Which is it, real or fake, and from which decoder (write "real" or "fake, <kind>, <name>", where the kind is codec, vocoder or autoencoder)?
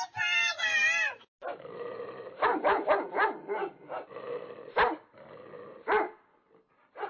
real